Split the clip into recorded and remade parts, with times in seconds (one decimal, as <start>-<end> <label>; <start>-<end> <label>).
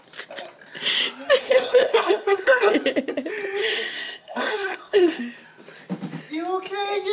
0.0-1.4 recorded; 1.4-2.7 remade; 2.7-3.6 recorded; 3.6-5.2 remade; 5.2-7.1 recorded